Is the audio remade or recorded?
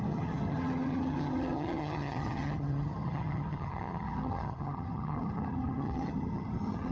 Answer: remade